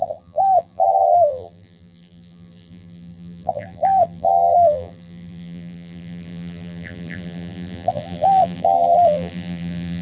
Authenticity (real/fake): fake